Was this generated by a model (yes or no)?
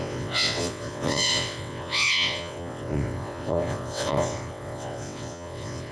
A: yes